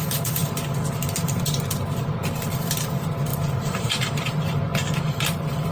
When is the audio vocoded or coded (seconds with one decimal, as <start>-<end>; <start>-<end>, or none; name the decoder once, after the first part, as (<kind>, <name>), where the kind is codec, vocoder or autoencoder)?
3.3-4.0 (vocoder, BigVGAN v2)